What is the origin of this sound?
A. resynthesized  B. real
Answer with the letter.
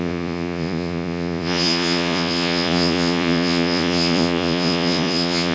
A